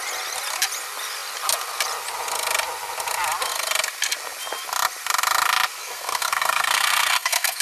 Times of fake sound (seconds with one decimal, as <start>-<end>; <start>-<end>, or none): 5.8-7.6